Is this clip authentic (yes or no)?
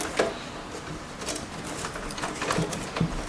yes